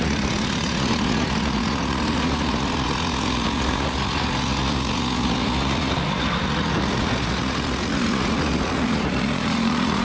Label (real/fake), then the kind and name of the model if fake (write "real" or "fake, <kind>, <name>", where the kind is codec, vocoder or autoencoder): fake, vocoder, Vocos